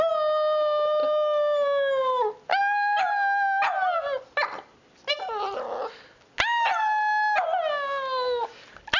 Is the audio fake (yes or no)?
no